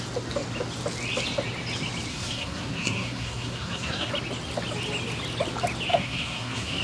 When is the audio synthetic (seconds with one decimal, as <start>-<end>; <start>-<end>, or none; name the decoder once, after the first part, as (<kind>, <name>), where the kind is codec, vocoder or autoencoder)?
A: 2.1-4.1 (codec, SNAC); 5.9-6.8